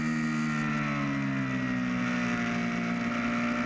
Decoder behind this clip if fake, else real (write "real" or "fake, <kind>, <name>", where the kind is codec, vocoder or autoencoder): real